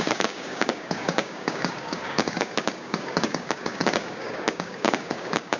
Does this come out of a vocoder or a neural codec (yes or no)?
yes